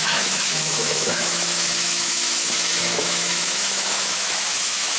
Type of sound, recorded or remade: remade